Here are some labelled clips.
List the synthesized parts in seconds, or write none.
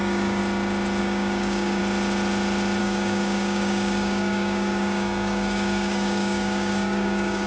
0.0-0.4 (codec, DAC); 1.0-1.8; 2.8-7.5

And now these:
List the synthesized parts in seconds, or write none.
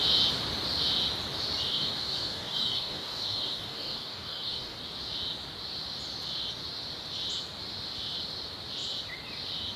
1.7-4.8 (codec, DAC)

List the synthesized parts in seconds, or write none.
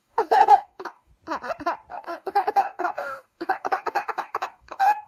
0.0-1.1 (codec, DAC); 1.9-5.1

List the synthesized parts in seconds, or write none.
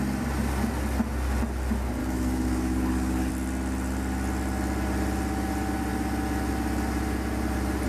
2.0-3.3 (codec, DAC)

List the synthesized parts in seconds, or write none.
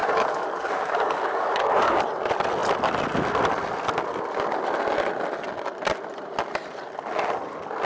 0.0-2.0 (codec, DAC)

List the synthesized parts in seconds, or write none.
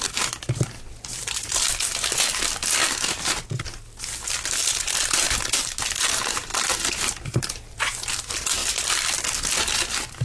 none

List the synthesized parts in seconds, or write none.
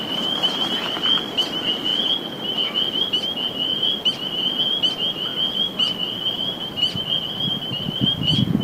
none